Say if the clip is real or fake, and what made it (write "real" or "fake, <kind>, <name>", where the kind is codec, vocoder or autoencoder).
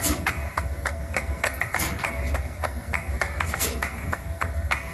fake, codec, SNAC